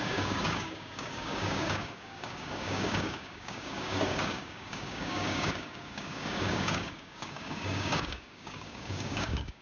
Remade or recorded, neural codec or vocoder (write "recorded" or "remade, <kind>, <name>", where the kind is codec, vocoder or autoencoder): remade, codec, DAC